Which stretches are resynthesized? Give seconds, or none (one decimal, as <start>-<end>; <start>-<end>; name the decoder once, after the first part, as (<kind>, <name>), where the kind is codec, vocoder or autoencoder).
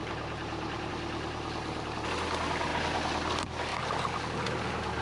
0.0-0.9 (vocoder, BigVGAN v2)